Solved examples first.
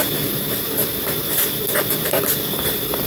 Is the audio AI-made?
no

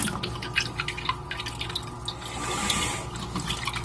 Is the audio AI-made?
no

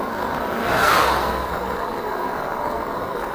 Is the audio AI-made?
yes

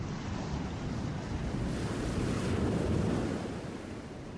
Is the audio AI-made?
no